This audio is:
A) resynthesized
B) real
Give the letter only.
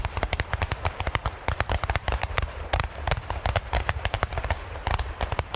A